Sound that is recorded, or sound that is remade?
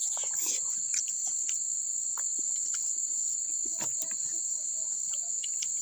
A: recorded